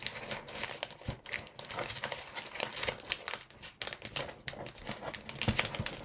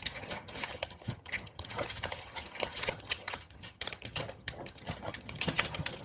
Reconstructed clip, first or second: second